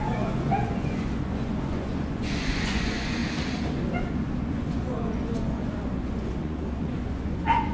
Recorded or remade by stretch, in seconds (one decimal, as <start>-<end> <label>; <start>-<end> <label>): 0.0-3.2 remade; 3.2-4.4 recorded; 4.4-7.7 remade